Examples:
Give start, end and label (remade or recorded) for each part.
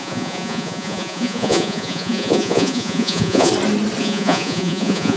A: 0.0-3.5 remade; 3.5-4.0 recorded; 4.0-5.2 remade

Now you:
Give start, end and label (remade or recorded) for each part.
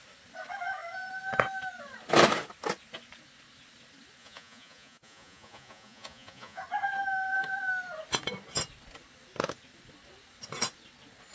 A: 0.0-4.2 recorded; 4.2-6.6 remade; 6.6-11.3 recorded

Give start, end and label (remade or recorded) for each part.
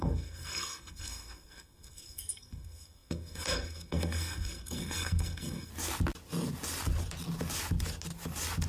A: 0.0-5.7 remade; 5.7-8.7 recorded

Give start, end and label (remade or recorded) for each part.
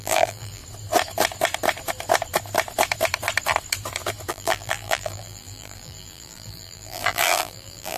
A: 0.0-0.6 remade; 0.6-4.3 recorded; 4.3-8.0 remade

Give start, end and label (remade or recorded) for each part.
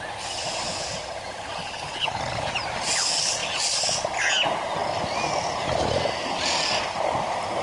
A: 0.0-1.6 recorded; 1.6-2.2 remade; 2.2-7.6 recorded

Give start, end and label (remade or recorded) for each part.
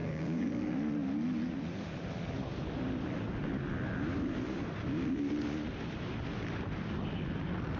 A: 0.0-0.5 remade; 0.5-7.8 recorded